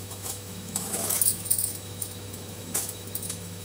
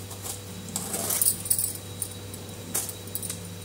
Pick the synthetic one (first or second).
first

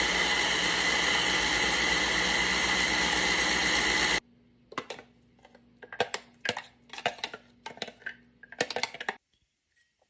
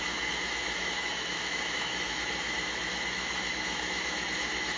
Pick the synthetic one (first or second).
second